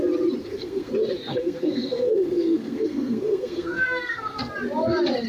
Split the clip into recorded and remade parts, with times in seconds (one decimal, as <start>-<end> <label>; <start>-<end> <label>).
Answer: 0.0-0.4 recorded; 0.4-0.9 remade; 0.9-1.3 recorded; 1.3-4.5 remade; 4.5-5.3 recorded